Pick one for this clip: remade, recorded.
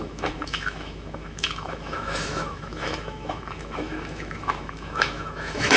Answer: remade